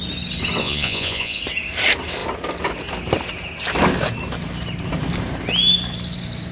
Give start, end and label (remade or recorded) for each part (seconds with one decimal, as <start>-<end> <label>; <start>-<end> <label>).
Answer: 0.0-0.6 recorded; 0.6-1.4 remade; 1.4-6.5 recorded